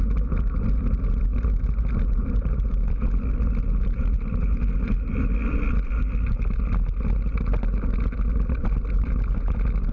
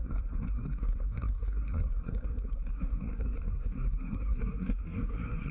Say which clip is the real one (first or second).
first